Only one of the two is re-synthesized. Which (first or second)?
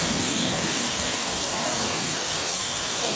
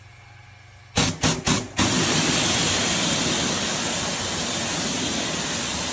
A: first